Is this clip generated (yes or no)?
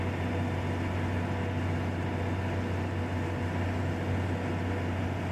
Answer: no